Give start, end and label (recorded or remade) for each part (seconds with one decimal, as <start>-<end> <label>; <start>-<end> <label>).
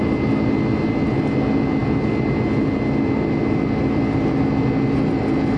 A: 0.0-5.6 recorded